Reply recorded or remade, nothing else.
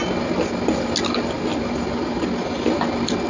recorded